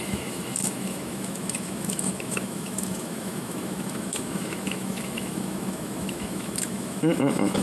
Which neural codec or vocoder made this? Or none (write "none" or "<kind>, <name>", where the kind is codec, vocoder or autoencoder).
autoencoder, DAC-VAE